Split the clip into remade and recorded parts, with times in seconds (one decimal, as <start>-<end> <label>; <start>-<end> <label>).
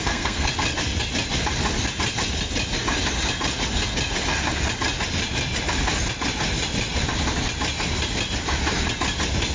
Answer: 0.0-0.5 remade; 0.5-9.5 recorded